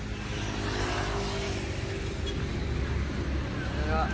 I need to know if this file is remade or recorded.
recorded